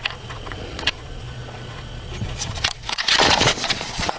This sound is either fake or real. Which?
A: fake